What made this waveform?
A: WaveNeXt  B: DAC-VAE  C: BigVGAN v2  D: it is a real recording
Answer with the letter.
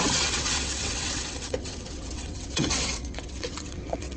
A